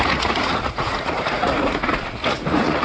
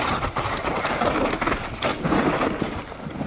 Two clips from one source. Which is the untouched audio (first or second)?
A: second